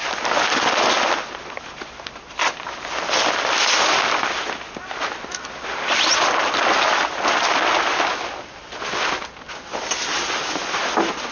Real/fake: real